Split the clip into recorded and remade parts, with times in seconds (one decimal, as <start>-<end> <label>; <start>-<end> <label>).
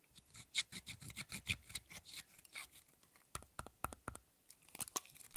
0.0-5.4 recorded